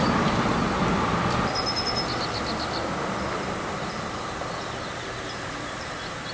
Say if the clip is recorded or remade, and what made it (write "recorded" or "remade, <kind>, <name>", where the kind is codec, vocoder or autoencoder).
recorded